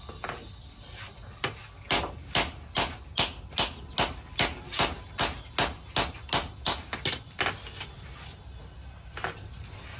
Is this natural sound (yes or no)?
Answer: yes